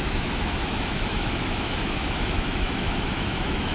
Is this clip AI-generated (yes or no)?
yes